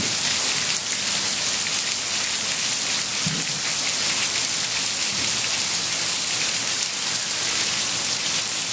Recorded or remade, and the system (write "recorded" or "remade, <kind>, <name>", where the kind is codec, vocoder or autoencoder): recorded